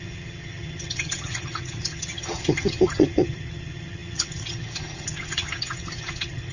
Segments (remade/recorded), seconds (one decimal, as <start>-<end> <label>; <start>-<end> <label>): 0.0-6.5 remade